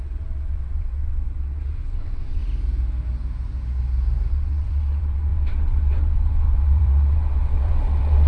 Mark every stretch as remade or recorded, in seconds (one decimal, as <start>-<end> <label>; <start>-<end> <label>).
0.0-2.4 remade; 2.4-4.3 recorded; 4.3-8.3 remade